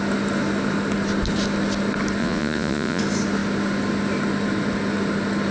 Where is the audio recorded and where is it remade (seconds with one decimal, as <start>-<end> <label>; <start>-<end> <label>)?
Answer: 0.0-2.2 recorded; 2.2-3.0 remade; 3.0-5.5 recorded